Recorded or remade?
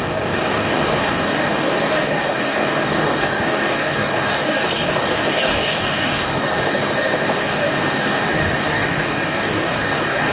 remade